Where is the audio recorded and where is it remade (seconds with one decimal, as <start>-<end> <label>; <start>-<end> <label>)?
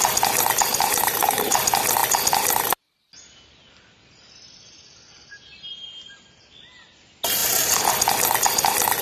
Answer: 0.0-0.7 recorded; 0.7-1.5 remade; 1.5-9.0 recorded